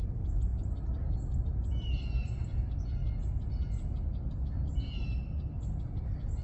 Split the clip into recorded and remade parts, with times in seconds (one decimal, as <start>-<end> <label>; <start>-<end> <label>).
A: 0.0-6.4 recorded

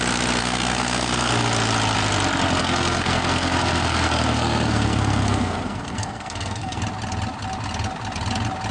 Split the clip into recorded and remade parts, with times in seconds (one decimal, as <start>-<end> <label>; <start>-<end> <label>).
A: 0.0-0.4 recorded; 0.4-1.3 remade; 1.3-2.6 recorded; 2.6-6.8 remade; 6.8-8.7 recorded

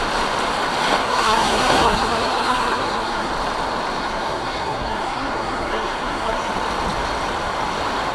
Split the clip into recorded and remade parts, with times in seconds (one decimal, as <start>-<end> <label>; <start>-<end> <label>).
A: 0.0-1.0 recorded; 1.0-3.3 remade; 3.3-4.0 recorded; 4.0-6.5 remade; 6.5-8.1 recorded

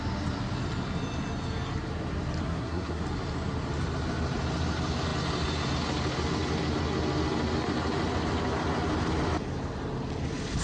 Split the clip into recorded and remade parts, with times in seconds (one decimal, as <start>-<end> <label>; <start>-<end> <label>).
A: 0.0-2.4 recorded; 2.4-3.0 remade; 3.0-10.6 recorded

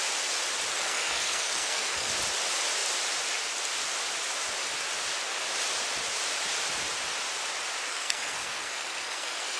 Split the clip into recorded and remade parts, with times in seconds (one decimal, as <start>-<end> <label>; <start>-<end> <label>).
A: 0.0-0.7 recorded; 0.7-2.1 remade; 2.1-7.9 recorded; 7.9-9.6 remade

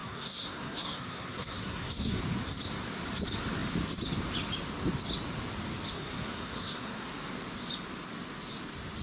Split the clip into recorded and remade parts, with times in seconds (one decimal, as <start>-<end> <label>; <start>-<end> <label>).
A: 0.0-2.2 remade; 2.2-5.9 recorded; 5.9-7.1 remade; 7.1-9.0 recorded

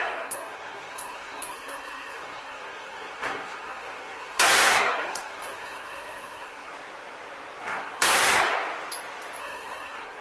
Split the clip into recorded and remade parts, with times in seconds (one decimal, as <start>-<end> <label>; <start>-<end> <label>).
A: 0.0-6.7 remade; 6.7-7.6 recorded; 7.6-8.5 remade; 8.5-9.4 recorded; 9.4-10.2 remade